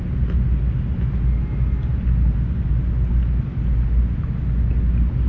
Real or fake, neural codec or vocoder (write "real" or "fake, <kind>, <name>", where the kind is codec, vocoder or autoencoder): real